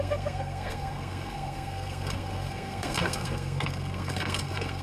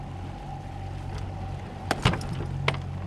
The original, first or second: second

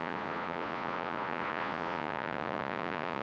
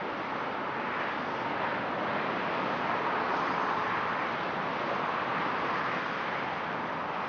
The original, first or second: second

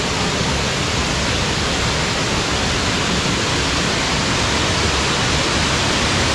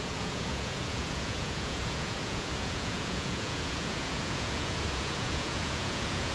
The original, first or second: first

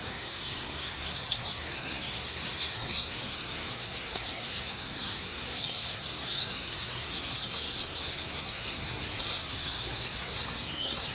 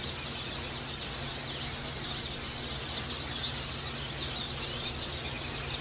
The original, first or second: second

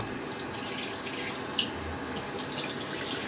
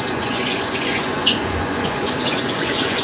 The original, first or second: first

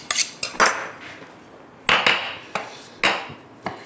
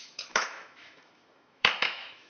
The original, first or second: first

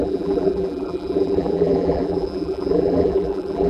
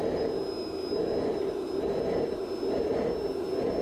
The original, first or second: second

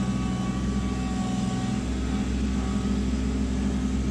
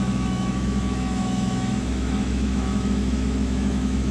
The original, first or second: first